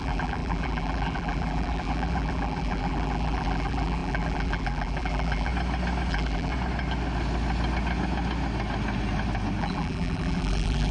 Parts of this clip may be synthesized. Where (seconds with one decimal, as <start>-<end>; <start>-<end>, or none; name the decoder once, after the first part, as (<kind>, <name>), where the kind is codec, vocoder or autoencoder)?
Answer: 0.0-5.5 (vocoder, BigVGAN v2); 6.1-6.5; 9.6-10.9